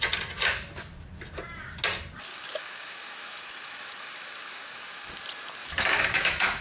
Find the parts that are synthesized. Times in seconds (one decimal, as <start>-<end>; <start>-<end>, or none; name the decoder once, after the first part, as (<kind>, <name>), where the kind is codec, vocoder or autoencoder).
2.3-5.1 (autoencoder, DAC-VAE); 5.6-6.6